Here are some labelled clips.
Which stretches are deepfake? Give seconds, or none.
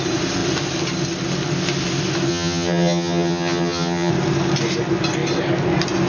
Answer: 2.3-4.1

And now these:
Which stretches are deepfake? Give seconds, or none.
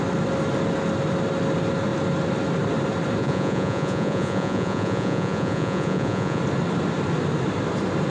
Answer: 3.2-6.4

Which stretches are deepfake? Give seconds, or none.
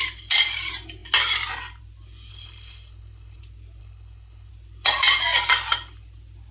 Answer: 2.3-3.4; 3.8-4.5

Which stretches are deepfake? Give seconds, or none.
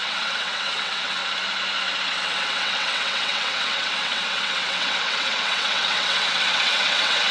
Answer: 0.0-1.2; 2.1-7.3